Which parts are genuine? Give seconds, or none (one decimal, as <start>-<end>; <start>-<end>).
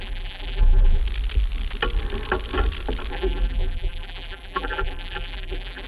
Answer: 1.0-3.1